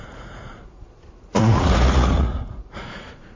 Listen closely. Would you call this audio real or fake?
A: fake